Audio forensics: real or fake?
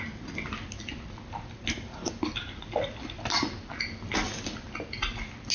real